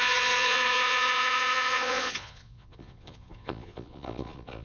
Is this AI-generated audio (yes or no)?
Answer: yes